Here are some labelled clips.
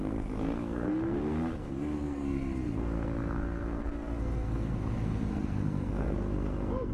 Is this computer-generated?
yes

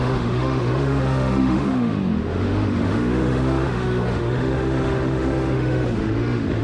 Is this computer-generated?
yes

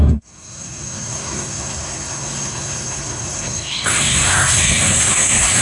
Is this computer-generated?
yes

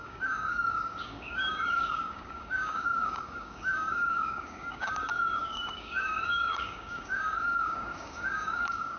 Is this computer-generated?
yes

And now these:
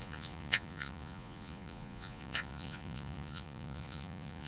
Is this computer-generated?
yes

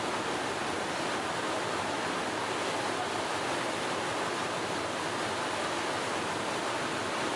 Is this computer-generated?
no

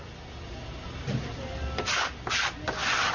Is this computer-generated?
no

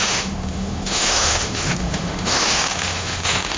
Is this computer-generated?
yes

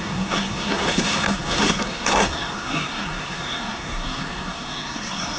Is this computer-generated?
yes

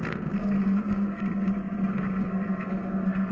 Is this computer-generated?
yes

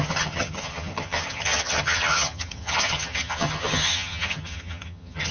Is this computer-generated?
yes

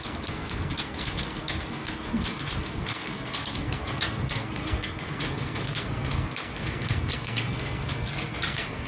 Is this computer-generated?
yes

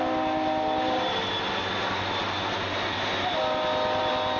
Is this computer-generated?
no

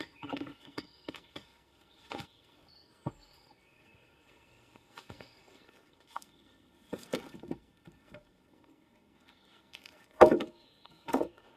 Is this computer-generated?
yes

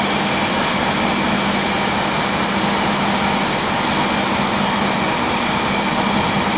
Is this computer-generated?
yes